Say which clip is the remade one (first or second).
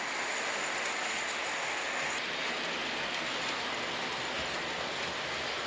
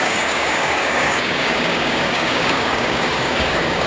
second